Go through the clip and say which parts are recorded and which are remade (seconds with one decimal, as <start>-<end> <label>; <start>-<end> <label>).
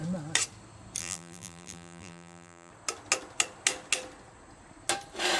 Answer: 0.0-1.0 recorded; 1.0-2.7 remade; 2.7-5.4 recorded